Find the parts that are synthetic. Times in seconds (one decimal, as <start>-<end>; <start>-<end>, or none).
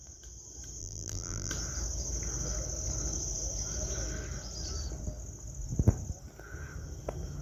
0.8-1.5